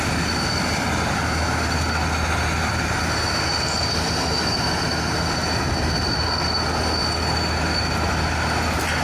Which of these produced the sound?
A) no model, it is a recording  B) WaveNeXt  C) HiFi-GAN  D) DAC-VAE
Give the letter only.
A